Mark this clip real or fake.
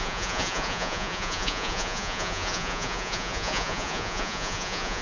fake